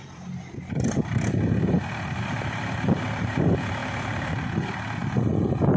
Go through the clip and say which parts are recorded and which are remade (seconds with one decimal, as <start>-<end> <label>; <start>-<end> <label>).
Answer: 0.0-5.8 remade